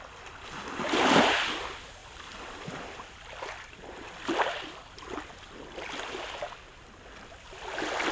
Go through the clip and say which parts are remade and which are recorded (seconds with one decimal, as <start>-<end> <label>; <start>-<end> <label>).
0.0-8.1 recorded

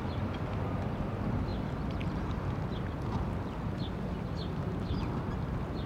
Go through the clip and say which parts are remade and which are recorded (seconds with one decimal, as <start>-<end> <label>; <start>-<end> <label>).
0.0-5.9 recorded

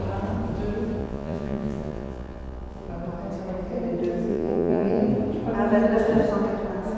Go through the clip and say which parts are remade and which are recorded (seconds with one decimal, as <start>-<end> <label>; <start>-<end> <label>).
0.0-1.0 recorded; 1.0-2.9 remade; 2.9-4.3 recorded; 4.3-5.0 remade; 5.0-7.0 recorded

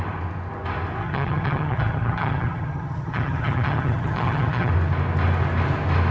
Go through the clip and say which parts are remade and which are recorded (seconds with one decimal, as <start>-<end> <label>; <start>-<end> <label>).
0.0-1.0 recorded; 1.0-4.7 remade; 4.7-6.1 recorded

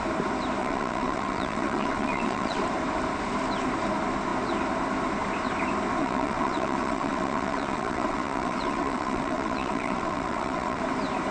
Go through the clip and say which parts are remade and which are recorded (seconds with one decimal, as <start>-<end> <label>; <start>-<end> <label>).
0.0-0.6 recorded; 0.6-2.6 remade; 2.6-6.0 recorded; 6.0-10.8 remade; 10.8-11.3 recorded

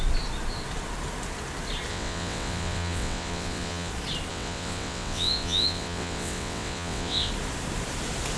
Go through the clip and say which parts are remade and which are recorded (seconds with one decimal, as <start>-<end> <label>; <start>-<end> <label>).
0.0-1.9 recorded; 1.9-3.9 remade; 3.9-4.3 recorded; 4.3-7.3 remade; 7.3-8.4 recorded

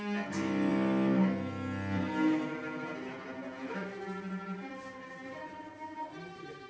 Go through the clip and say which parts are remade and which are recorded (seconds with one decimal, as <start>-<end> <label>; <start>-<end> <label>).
0.0-6.7 recorded

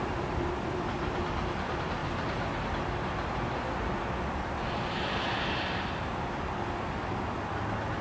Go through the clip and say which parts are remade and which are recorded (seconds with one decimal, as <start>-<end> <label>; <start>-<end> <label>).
0.0-8.0 recorded